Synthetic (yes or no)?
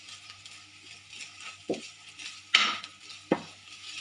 no